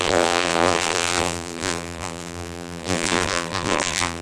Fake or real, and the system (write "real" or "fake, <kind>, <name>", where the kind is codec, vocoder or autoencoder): fake, vocoder, BigVGAN v2